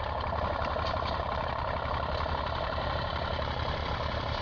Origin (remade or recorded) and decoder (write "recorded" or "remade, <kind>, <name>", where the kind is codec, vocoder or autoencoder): remade, vocoder, BigVGAN v2